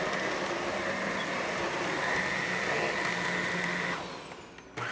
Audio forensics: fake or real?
real